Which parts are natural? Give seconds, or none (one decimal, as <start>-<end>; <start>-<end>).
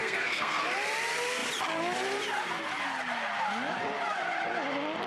0.6-5.1